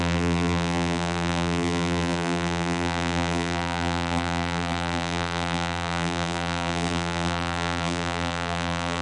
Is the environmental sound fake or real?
fake